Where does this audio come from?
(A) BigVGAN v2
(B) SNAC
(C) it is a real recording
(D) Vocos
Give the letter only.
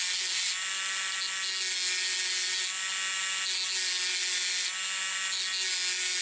C